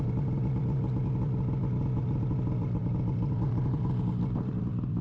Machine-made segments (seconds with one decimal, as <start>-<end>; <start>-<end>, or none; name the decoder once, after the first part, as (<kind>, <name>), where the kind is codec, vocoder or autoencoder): 0.0-5.0 (vocoder, BigVGAN v2)